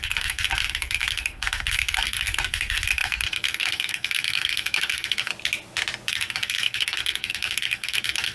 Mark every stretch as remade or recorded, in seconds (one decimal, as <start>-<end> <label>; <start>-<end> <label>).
0.0-5.3 remade; 5.3-6.1 recorded; 6.1-8.3 remade